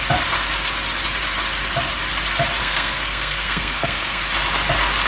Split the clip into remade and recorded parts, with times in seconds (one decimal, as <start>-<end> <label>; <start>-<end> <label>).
0.0-2.6 recorded; 2.6-4.2 remade; 4.2-5.1 recorded